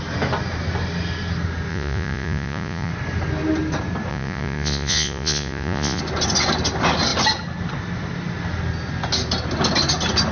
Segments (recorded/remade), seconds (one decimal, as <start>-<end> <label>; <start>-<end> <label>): 0.0-1.7 recorded; 1.7-2.9 remade; 2.9-4.1 recorded; 4.1-6.0 remade; 6.0-10.3 recorded